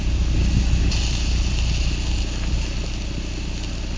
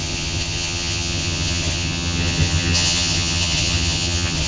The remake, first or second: second